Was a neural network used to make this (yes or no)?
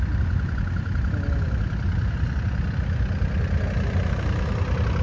no